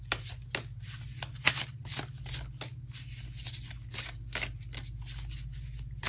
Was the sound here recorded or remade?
recorded